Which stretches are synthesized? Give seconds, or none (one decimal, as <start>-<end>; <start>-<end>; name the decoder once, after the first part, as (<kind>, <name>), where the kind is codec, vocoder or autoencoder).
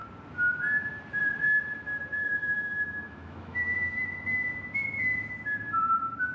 2.2-4.5 (autoencoder, DAC-VAE)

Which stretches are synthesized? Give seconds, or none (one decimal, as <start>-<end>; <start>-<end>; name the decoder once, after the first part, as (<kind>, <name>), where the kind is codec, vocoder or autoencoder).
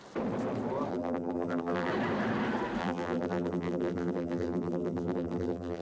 0.9-1.9 (vocoder, BigVGAN v2); 2.8-5.8